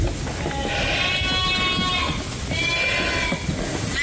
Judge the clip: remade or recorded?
recorded